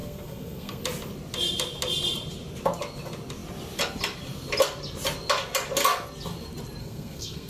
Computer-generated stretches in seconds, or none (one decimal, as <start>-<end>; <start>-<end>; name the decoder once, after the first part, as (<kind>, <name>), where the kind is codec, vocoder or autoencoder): 0.0-0.8 (codec, SNAC); 6.8-7.5